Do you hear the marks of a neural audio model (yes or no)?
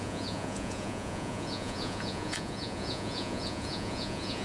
yes